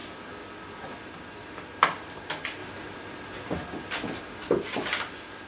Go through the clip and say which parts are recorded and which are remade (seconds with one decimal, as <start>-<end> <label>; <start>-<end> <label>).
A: 0.0-5.5 recorded